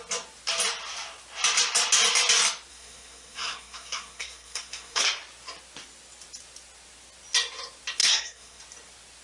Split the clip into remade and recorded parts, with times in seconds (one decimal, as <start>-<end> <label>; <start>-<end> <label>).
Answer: 0.0-2.7 recorded; 2.7-5.0 remade; 5.0-8.0 recorded; 8.0-8.6 remade; 8.6-9.2 recorded